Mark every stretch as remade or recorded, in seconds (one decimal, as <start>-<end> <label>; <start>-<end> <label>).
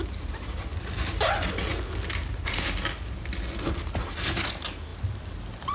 0.0-5.7 recorded